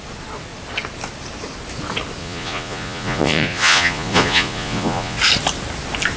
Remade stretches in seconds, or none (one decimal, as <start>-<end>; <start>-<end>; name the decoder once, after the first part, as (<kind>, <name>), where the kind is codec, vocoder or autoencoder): 2.2-5.2 (vocoder, Vocos)

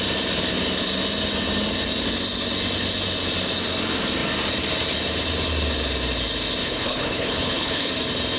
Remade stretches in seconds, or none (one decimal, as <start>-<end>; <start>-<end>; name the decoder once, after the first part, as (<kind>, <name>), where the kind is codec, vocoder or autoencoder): 6.6-7.9 (codec, HILCodec)

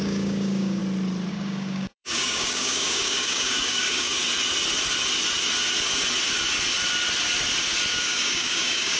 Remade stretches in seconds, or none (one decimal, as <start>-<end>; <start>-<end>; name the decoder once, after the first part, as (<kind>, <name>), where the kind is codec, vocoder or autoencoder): 0.0-0.8 (codec, DAC); 1.3-4.2; 7.9-9.0